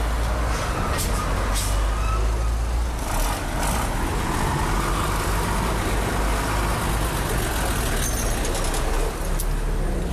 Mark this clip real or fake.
real